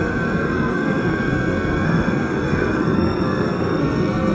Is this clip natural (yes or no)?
no